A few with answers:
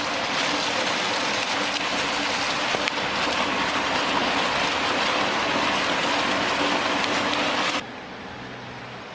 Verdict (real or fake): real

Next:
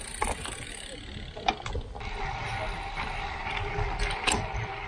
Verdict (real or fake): real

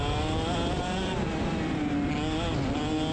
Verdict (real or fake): real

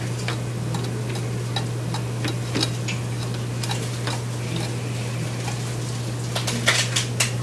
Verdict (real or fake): real